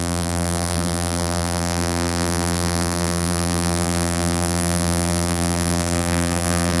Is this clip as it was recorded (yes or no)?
no